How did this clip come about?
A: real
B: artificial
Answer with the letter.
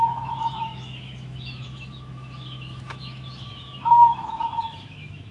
B